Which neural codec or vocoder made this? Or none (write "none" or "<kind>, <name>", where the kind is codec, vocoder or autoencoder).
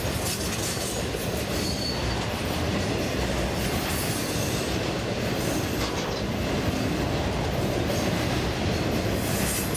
none